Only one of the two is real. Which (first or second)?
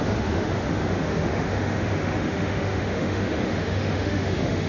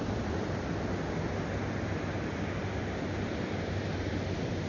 second